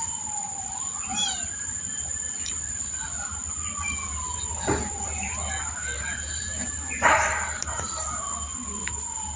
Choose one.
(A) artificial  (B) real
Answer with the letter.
A